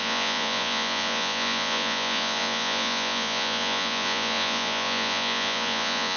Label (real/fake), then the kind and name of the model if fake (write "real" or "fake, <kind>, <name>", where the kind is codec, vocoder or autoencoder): fake, vocoder, Vocos